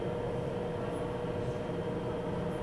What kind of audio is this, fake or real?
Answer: real